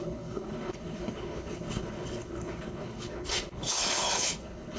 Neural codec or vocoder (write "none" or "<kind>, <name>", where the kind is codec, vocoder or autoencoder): codec, HILCodec